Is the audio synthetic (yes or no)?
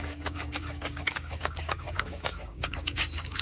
yes